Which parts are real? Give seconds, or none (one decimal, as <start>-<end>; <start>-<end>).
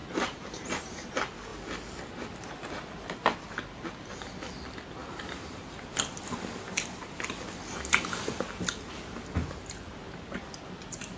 1.1-5.0; 5.7-11.2